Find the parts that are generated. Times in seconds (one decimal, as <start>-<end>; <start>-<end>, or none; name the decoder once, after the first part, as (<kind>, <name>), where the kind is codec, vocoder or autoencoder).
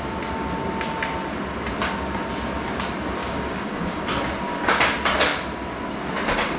3.2-4.0 (codec, DAC)